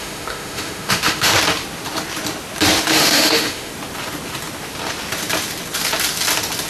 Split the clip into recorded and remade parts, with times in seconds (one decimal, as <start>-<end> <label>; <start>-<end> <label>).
0.0-1.3 remade; 1.3-2.9 recorded; 2.9-3.7 remade; 3.7-6.7 recorded